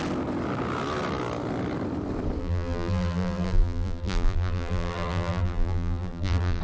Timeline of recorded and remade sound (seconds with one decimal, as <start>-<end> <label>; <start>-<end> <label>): 0.0-2.4 recorded; 2.4-6.6 remade